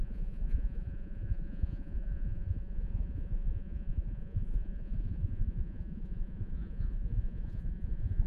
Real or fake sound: fake